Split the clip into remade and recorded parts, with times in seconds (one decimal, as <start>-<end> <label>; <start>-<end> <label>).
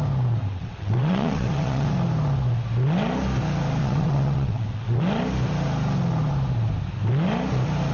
0.0-0.4 recorded; 0.4-1.9 remade; 1.9-3.8 recorded; 3.8-5.0 remade; 5.0-7.9 recorded